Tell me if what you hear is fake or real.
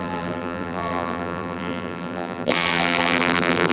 fake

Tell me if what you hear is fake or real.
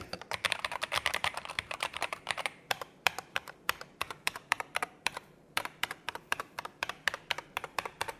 fake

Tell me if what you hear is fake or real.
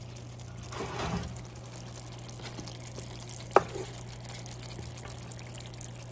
real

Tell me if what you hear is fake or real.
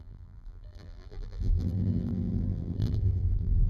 fake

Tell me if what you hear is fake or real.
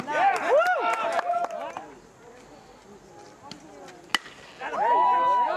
real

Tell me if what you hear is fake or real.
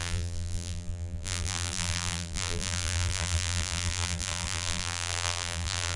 fake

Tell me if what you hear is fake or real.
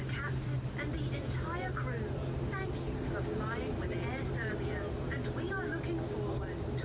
real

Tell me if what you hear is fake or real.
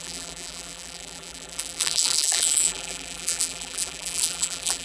fake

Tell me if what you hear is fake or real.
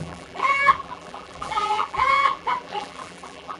fake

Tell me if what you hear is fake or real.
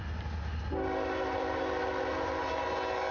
real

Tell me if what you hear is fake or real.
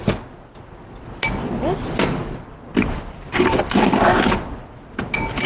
real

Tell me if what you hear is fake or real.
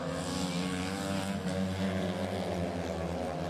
real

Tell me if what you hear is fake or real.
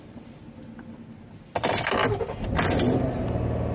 real